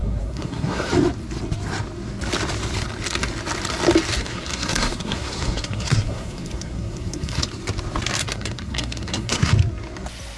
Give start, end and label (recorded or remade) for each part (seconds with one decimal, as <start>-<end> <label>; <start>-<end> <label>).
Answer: 0.0-0.9 remade; 0.9-4.2 recorded; 4.2-7.4 remade; 7.4-8.2 recorded; 8.2-9.5 remade; 9.5-10.4 recorded